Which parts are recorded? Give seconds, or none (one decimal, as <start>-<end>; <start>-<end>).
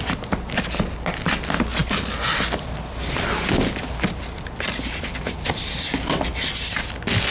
0.0-7.3